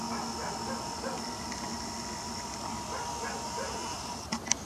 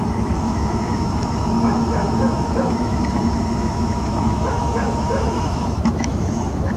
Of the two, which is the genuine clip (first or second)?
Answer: first